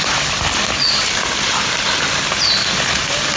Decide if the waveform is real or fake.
real